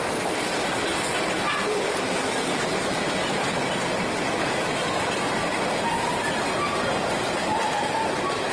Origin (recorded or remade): recorded